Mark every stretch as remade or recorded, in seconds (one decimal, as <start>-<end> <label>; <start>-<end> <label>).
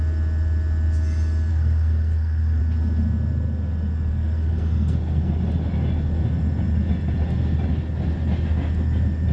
0.0-1.5 recorded; 1.5-2.6 remade; 2.6-4.1 recorded; 4.1-5.4 remade; 5.4-9.3 recorded